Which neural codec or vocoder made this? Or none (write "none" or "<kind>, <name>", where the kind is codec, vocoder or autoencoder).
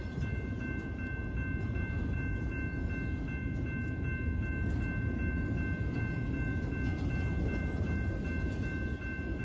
none